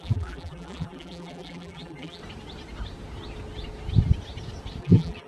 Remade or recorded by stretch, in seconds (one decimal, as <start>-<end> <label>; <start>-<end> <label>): 0.0-2.2 remade; 2.2-4.8 recorded; 4.8-5.3 remade